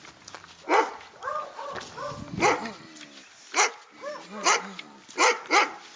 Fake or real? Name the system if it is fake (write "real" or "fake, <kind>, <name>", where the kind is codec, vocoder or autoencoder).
real